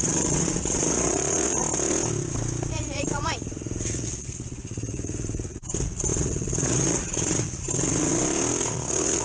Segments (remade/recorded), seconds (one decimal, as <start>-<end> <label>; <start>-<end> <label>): 0.0-1.6 remade; 1.6-2.7 recorded; 2.7-8.1 remade; 8.1-8.7 recorded; 8.7-9.2 remade